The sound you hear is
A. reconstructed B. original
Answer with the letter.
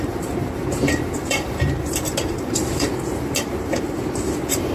A